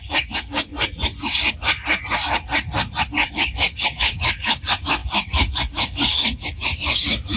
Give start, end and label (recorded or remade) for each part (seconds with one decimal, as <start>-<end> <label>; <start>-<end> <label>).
0.0-0.7 remade; 0.7-3.3 recorded; 3.3-7.4 remade